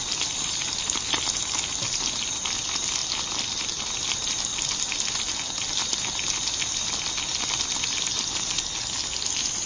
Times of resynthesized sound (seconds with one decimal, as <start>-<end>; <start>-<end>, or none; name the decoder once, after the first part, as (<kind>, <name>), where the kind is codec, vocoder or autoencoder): none